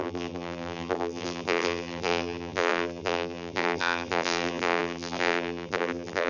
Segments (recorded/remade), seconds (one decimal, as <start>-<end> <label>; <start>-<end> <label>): 0.0-6.3 remade